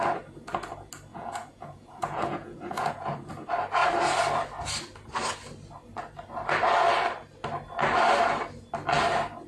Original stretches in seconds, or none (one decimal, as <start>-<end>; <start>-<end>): 0.0-1.1; 3.3-9.5

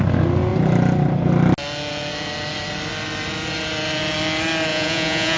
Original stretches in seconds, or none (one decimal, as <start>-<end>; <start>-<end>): 0.0-4.7

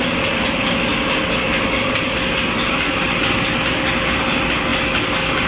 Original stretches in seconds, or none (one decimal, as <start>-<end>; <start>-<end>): 0.0-5.5

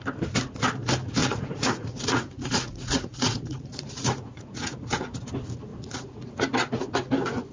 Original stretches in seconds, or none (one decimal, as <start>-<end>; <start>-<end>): 0.0-1.2; 5.2-5.7; 6.4-7.5

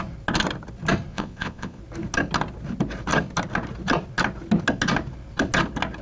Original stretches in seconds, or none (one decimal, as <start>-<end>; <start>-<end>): 0.0-1.1; 1.8-6.0